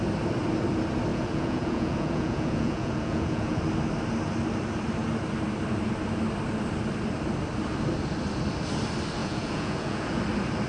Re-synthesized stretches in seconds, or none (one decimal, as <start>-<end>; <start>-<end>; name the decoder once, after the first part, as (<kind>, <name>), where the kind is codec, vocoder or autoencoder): 1.1-3.6 (vocoder, Vocos); 9.2-10.2